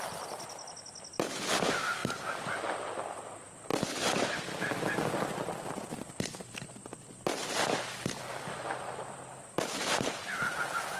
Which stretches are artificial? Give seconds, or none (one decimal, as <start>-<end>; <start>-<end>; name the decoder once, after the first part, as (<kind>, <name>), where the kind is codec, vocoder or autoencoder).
none